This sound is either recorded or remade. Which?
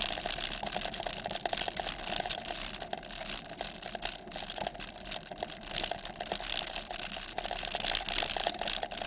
recorded